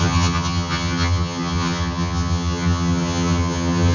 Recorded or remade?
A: remade